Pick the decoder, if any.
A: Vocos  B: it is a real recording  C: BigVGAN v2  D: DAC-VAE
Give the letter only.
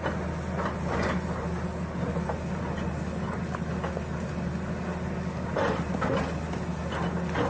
B